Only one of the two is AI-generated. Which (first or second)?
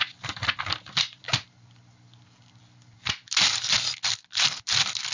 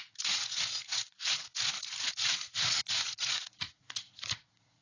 second